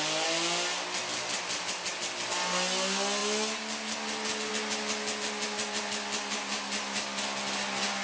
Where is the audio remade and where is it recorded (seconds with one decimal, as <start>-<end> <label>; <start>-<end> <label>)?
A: 0.0-8.0 recorded